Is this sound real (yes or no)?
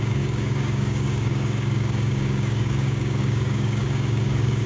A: no